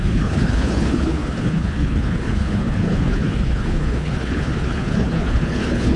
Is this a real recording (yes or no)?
no